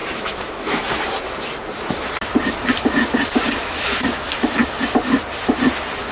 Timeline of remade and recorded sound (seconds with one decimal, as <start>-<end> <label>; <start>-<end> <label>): 0.0-0.8 remade; 0.8-3.6 recorded; 3.6-4.6 remade; 4.6-6.1 recorded